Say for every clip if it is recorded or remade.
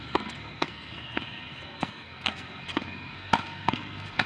remade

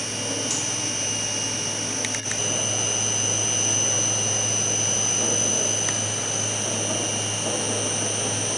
recorded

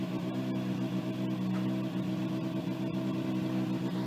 recorded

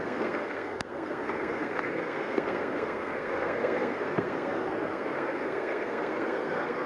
remade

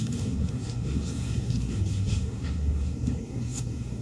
remade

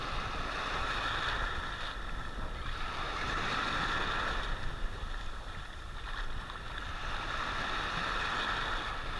recorded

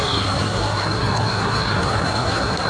remade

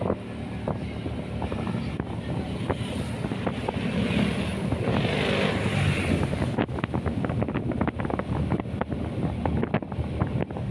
recorded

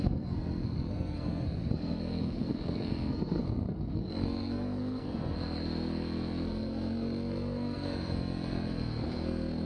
remade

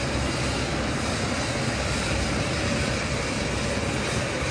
recorded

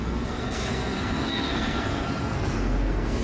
remade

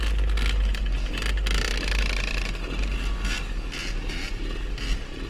recorded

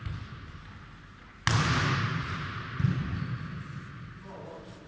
recorded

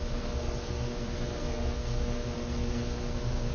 remade